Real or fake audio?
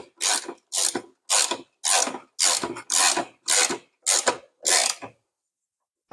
real